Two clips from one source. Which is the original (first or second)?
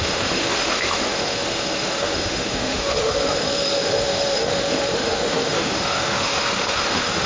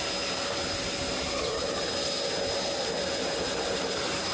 second